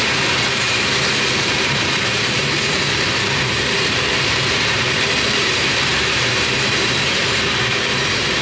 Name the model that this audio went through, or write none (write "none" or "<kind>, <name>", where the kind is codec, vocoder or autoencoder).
vocoder, BigVGAN v2